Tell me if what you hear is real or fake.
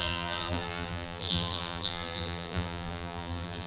fake